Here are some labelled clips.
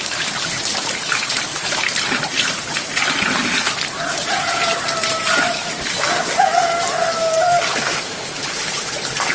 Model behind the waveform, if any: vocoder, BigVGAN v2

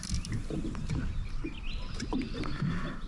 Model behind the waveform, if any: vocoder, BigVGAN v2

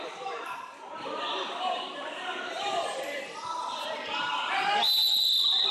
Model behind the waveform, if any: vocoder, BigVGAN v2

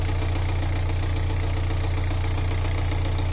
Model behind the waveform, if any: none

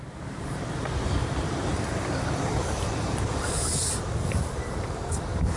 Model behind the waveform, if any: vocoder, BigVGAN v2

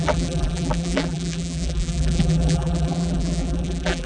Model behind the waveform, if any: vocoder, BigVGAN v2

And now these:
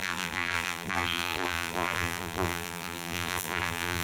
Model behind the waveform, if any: vocoder, BigVGAN v2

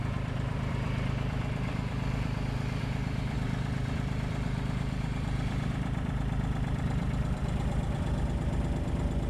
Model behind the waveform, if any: vocoder, BigVGAN v2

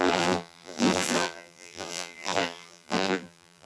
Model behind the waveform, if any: vocoder, BigVGAN v2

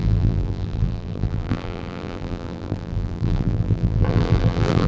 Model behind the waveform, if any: vocoder, BigVGAN v2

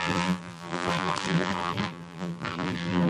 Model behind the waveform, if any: vocoder, BigVGAN v2